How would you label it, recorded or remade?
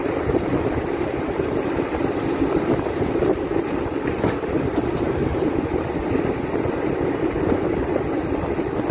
recorded